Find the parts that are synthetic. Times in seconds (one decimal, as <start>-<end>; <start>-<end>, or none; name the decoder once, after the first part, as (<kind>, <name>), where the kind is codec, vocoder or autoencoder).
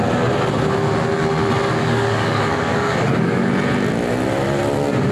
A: 1.8-3.5 (codec, DAC)